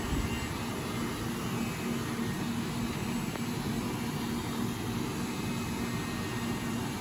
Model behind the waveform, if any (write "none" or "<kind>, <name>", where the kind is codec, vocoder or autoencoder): none